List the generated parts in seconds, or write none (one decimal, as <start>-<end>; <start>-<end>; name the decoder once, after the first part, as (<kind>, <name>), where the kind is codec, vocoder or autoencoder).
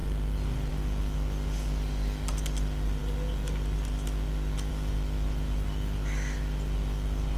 none